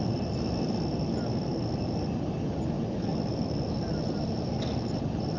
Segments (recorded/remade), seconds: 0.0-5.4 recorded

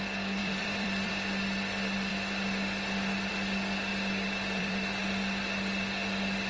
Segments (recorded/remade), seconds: 0.0-0.4 recorded; 0.4-1.1 remade; 1.1-3.9 recorded; 3.9-5.0 remade; 5.0-6.5 recorded

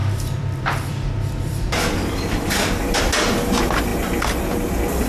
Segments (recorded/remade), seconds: 0.0-3.0 remade; 3.0-5.1 recorded

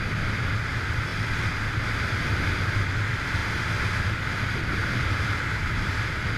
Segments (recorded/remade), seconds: 0.0-4.8 recorded; 4.8-5.9 remade; 5.9-6.4 recorded

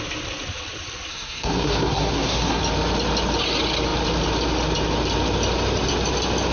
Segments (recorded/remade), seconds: 0.0-1.1 recorded; 1.1-2.6 remade; 2.6-6.5 recorded

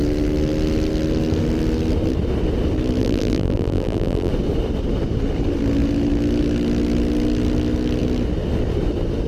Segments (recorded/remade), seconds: 0.0-3.0 recorded; 3.0-4.3 remade; 4.3-9.3 recorded